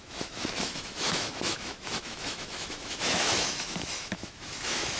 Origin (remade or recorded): remade